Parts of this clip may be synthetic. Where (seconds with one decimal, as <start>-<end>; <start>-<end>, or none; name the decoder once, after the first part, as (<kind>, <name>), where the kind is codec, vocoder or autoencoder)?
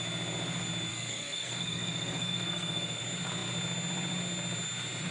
0.9-3.0 (codec, SNAC)